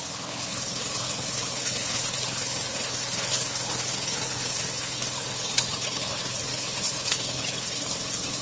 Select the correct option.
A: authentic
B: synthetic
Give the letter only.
B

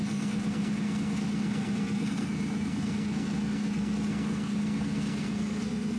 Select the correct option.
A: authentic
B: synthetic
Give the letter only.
B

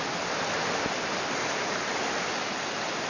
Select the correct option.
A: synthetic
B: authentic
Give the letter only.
B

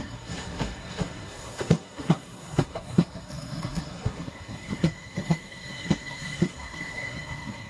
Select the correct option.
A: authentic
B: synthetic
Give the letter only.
B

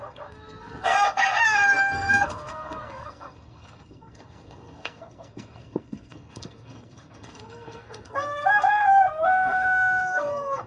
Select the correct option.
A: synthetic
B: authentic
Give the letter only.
A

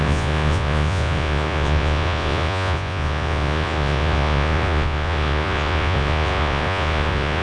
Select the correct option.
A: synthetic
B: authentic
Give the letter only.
A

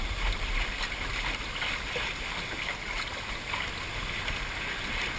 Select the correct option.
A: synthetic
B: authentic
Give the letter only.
B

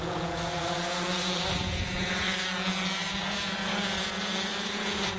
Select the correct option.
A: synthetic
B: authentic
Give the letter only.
A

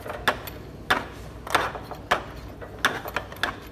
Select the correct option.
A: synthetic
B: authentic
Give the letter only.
B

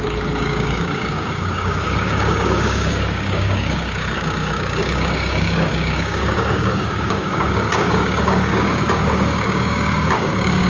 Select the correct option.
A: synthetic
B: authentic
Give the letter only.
A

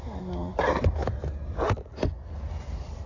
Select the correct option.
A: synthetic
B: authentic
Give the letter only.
B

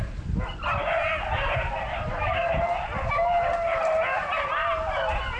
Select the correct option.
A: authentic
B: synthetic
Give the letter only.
A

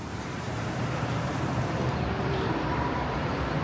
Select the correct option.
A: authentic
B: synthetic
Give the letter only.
B